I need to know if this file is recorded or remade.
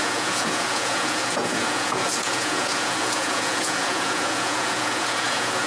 remade